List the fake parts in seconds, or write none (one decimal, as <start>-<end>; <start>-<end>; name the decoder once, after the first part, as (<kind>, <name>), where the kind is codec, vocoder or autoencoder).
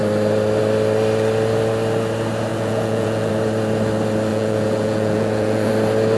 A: 2.5-3.3 (vocoder, Vocos); 4.3-5.7